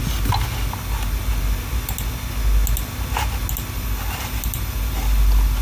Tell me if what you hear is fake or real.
real